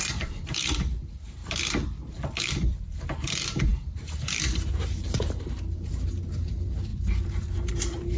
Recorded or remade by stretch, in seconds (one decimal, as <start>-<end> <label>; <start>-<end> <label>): 0.0-1.4 remade; 1.4-2.4 recorded; 2.4-8.2 remade